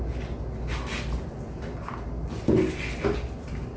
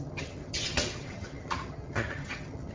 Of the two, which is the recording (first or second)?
first